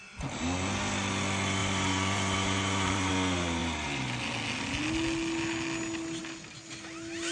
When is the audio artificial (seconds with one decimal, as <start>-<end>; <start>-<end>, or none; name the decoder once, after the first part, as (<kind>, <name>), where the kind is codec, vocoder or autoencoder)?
1.6-3.1 (vocoder, BigVGAN v2)